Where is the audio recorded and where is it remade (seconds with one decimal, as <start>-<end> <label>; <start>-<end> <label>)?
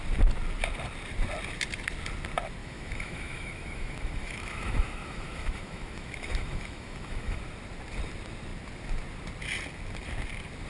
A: 0.0-2.6 recorded; 2.6-7.4 remade; 7.4-10.7 recorded